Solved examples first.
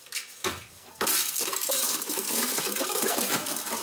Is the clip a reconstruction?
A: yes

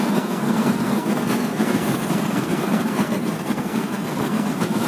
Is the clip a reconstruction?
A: yes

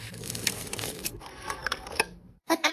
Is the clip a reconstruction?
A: yes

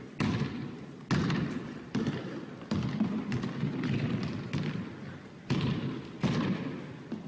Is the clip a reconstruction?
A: no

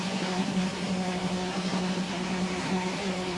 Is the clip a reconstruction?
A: yes